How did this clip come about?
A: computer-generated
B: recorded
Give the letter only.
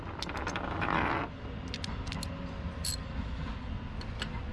B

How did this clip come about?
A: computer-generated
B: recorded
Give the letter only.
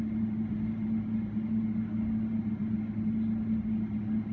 B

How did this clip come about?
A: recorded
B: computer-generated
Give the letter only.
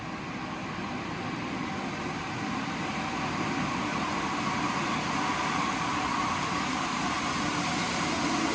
A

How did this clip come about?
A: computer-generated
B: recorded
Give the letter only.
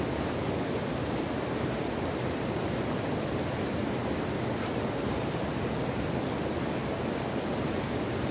B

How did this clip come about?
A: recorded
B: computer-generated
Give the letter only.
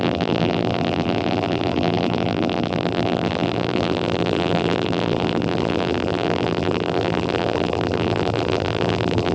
B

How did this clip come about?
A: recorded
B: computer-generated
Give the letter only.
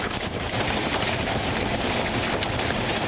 B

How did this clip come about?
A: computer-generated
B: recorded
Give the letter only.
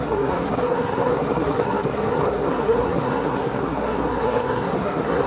A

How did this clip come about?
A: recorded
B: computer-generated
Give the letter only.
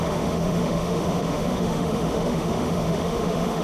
B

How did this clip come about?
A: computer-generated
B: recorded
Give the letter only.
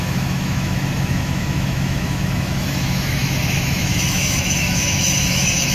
A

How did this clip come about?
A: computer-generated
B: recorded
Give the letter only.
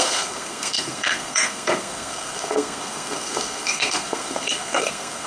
A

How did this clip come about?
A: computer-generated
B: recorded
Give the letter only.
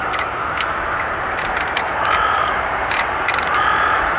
A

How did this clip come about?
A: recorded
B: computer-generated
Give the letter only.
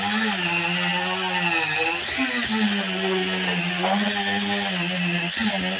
A